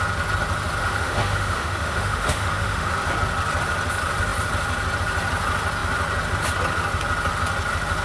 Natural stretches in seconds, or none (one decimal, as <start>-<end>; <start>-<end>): 0.0-0.8; 2.9-8.0